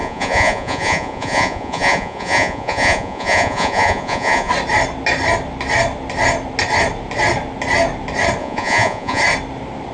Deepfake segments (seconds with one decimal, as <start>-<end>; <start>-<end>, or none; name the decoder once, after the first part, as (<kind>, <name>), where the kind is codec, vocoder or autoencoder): 0.0-4.5 (vocoder, Vocos); 8.4-9.2

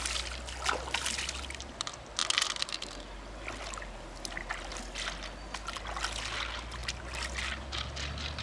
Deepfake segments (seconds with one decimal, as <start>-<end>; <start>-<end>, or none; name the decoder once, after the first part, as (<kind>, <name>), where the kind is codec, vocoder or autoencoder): none

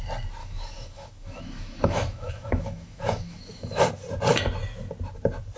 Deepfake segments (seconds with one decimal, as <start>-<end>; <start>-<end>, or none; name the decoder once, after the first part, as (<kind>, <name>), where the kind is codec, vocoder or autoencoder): 0.4-3.8 (autoencoder, DAC-VAE)

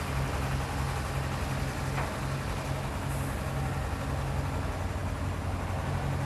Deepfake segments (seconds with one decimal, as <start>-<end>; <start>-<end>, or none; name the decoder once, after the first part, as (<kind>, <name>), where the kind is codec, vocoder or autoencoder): none

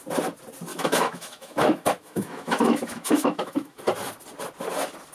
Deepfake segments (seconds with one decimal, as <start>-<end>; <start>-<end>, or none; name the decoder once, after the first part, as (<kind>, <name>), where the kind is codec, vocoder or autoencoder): 0.7-3.8 (autoencoder, DAC-VAE)

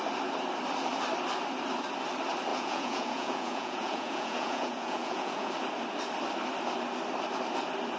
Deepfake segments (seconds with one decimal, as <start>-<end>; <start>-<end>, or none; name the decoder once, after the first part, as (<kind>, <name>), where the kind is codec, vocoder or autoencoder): 2.5-5.5 (vocoder, Vocos)